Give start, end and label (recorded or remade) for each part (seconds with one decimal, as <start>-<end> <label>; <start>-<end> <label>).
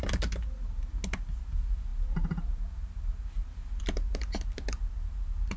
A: 0.0-5.6 recorded